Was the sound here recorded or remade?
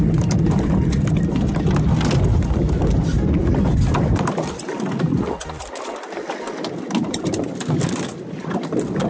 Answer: recorded